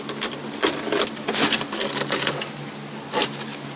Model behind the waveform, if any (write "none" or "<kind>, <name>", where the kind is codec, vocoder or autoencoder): none